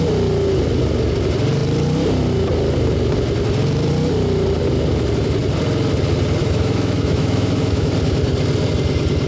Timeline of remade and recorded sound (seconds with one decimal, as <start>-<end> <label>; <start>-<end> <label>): 0.0-6.4 recorded; 6.4-7.9 remade; 7.9-9.3 recorded